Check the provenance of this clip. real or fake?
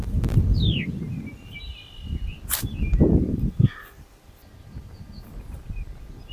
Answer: real